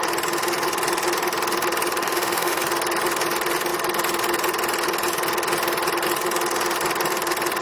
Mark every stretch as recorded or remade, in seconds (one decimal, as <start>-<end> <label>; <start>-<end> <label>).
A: 0.0-2.0 recorded; 2.0-2.6 remade; 2.6-7.6 recorded